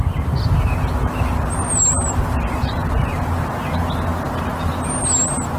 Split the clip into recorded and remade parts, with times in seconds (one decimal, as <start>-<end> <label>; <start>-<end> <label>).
0.0-3.4 remade; 3.4-5.6 recorded